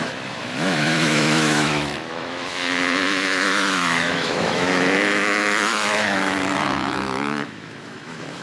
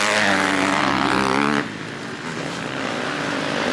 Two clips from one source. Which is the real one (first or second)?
second